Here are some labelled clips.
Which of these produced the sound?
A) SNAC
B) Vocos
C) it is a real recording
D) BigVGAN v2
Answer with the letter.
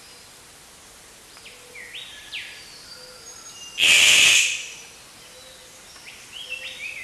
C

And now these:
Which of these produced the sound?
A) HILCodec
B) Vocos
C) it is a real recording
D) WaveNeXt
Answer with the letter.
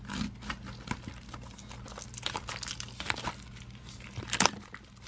C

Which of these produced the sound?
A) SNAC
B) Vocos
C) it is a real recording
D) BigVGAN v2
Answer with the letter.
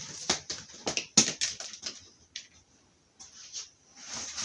C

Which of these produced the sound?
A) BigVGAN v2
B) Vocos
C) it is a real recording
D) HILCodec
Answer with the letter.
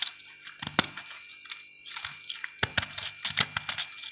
C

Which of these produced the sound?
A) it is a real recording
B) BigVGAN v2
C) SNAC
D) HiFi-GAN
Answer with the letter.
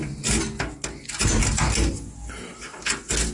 A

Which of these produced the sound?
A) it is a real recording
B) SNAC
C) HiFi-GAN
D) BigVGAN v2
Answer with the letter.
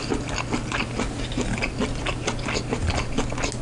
A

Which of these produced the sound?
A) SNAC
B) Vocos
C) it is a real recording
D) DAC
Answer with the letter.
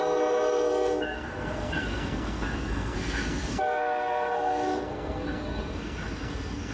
A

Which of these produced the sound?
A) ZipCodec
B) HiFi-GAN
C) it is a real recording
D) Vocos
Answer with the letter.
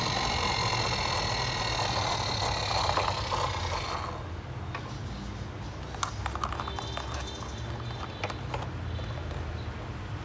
C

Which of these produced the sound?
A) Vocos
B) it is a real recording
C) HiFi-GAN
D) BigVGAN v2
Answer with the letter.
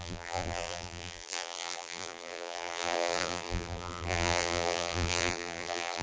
D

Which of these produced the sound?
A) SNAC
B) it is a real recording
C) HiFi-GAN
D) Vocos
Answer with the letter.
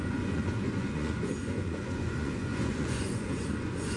D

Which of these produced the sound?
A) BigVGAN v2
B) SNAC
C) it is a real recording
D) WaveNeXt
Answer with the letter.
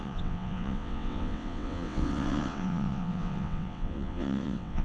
D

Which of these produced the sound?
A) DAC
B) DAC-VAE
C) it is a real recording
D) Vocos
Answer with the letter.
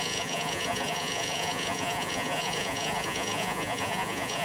D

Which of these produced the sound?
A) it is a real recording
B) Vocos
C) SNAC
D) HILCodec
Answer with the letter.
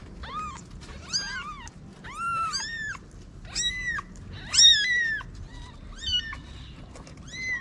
A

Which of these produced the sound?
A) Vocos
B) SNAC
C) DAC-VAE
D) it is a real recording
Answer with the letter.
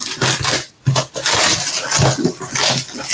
D